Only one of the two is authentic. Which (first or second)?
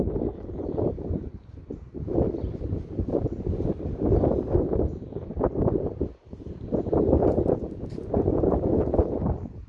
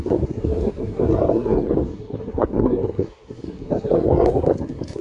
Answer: first